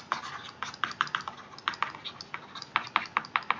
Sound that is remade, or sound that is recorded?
recorded